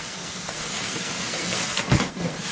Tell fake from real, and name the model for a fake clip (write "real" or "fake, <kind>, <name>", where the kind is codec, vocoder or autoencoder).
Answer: fake, codec, SNAC